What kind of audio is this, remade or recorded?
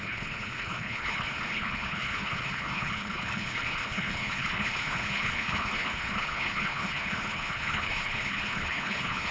remade